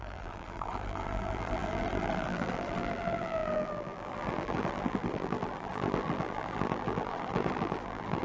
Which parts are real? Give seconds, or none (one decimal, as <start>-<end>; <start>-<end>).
none